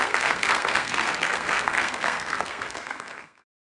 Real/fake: fake